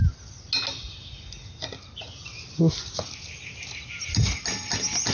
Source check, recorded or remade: recorded